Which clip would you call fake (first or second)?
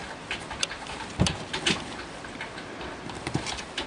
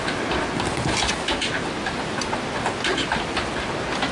first